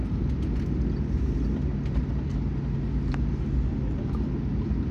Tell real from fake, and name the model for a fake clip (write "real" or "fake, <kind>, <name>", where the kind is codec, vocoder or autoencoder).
real